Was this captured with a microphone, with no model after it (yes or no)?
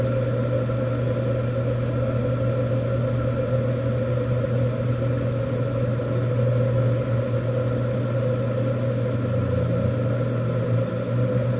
yes